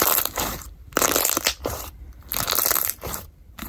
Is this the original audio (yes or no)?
no